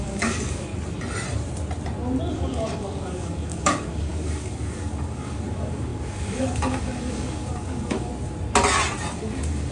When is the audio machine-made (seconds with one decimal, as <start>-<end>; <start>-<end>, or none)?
0.0-0.7; 2.3-8.1; 9.1-9.7